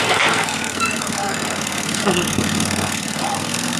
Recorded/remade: remade